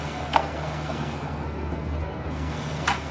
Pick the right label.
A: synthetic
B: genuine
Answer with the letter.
A